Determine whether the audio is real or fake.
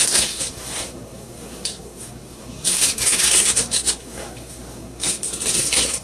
fake